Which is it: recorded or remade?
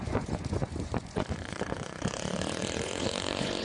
remade